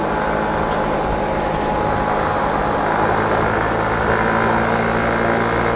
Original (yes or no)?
yes